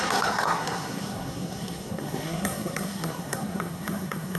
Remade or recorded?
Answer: remade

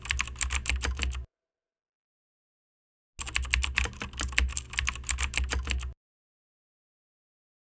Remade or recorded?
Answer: recorded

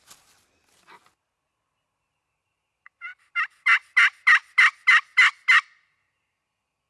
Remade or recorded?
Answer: recorded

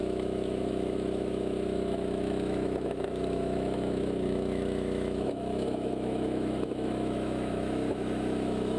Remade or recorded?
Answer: remade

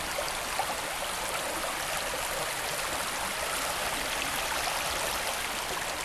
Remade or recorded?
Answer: recorded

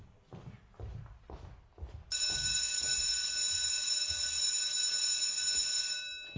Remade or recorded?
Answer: recorded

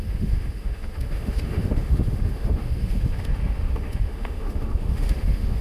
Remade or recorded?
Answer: remade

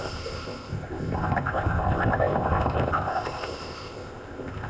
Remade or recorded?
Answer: remade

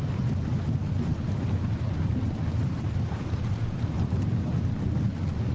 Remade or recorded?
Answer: recorded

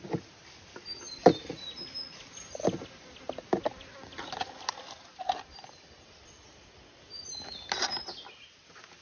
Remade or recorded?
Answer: recorded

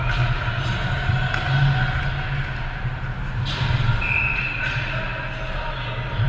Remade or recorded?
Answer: recorded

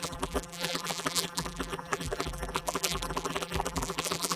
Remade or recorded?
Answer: remade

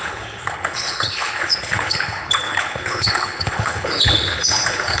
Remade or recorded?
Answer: remade